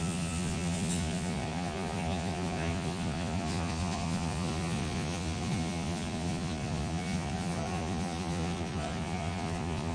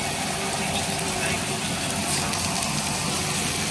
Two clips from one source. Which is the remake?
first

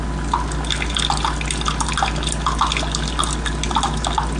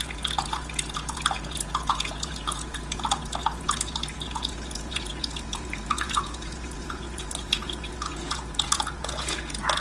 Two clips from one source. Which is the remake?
second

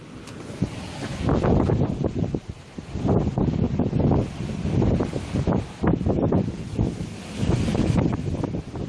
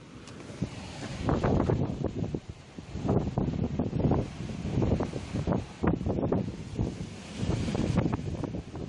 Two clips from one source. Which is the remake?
second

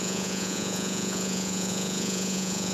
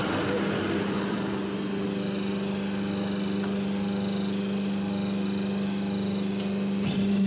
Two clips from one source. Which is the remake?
first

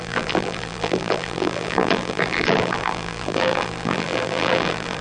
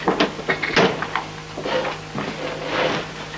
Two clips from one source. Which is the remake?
first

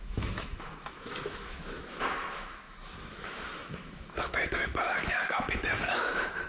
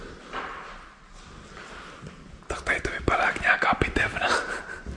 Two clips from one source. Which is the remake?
first